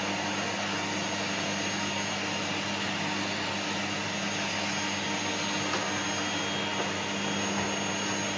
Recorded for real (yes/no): yes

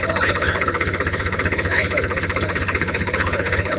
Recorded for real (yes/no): no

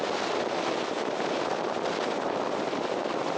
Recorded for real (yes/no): yes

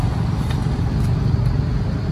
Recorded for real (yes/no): yes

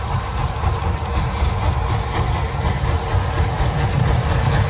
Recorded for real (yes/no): yes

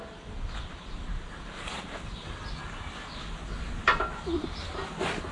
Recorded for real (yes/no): yes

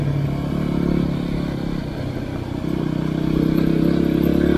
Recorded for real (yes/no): yes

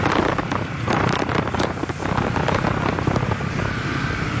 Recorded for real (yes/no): yes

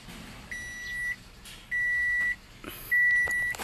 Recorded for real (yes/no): yes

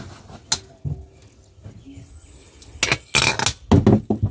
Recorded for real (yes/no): yes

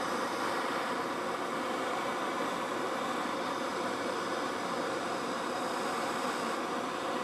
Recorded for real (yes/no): no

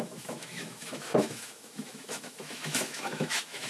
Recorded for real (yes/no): no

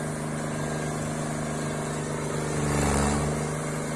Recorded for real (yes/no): yes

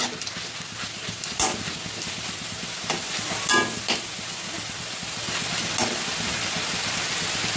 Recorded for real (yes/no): yes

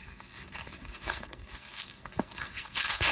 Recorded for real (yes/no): no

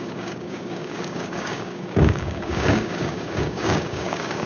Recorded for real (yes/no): no